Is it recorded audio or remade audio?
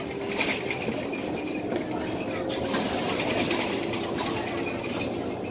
recorded